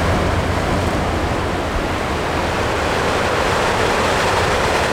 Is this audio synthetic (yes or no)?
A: no